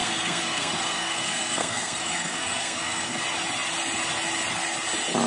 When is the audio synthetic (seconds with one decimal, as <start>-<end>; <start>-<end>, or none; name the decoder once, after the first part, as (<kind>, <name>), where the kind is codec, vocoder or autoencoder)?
0.0-3.2 (codec, SNAC)